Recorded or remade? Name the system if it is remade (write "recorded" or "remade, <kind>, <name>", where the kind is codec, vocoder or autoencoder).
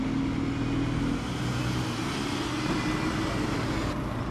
recorded